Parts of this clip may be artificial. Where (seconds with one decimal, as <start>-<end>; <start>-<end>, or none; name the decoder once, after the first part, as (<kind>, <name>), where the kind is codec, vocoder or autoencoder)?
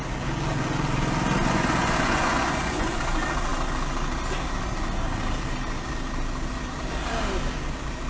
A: 1.4-3.0 (vocoder, Vocos)